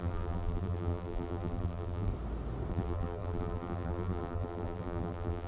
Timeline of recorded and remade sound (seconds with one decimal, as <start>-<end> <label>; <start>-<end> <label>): 0.0-2.1 remade; 2.1-2.7 recorded; 2.7-5.5 remade